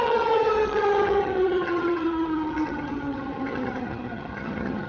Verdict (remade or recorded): remade